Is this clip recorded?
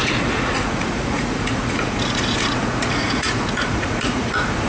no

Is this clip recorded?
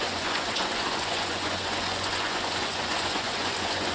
no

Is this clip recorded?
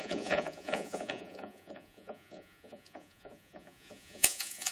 no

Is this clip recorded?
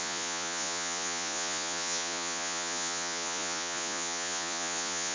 no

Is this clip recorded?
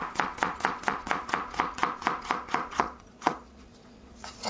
no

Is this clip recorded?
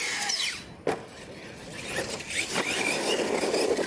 yes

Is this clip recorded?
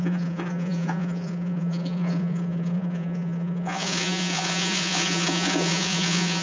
no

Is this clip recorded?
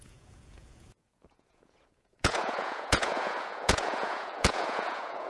no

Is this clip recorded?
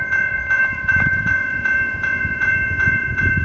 no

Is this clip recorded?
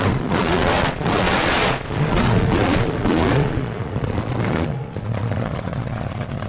no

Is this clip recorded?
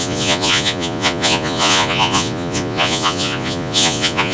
no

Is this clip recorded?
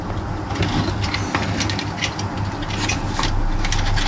yes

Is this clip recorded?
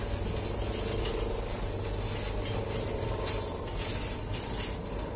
yes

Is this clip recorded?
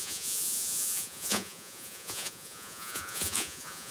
no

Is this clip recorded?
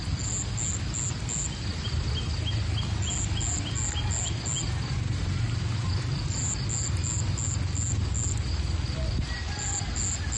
yes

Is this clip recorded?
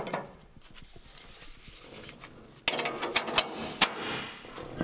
yes